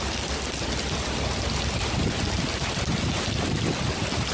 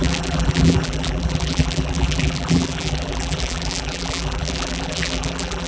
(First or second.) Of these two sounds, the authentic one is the first